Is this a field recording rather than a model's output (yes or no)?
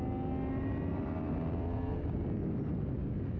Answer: yes